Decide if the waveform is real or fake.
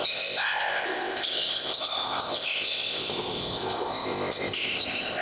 fake